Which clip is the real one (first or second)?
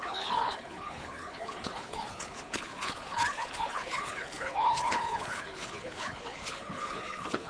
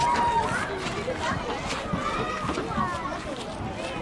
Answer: second